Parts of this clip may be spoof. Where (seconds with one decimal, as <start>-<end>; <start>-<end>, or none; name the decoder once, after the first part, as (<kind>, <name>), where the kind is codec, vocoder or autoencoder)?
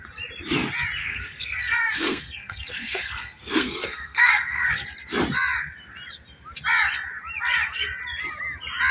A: 1.0-4.7 (codec, SNAC)